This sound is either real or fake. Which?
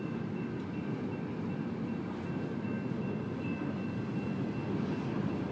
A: real